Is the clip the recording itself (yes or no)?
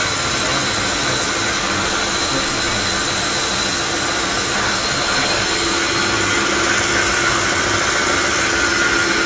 yes